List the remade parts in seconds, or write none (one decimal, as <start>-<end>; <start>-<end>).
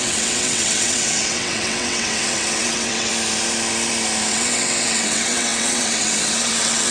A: 0.0-3.1; 4.3-6.9